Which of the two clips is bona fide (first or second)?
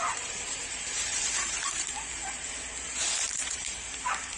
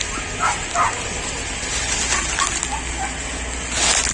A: second